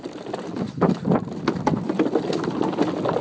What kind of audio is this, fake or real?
real